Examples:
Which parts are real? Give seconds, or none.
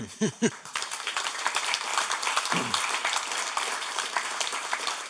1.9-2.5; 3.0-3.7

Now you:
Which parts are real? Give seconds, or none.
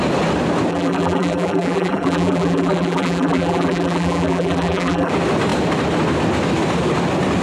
0.0-0.7; 5.1-7.4